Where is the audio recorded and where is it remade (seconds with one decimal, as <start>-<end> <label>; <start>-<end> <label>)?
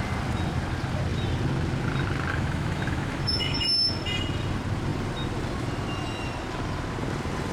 0.0-2.3 recorded; 2.3-3.9 remade; 3.9-7.5 recorded